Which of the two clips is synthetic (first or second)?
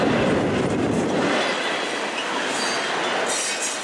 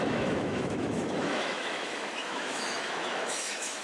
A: second